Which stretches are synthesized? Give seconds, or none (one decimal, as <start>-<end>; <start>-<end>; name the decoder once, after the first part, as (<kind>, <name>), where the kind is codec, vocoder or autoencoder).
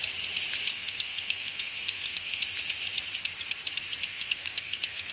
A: 0.7-2.4 (codec, SNAC); 4.1-5.1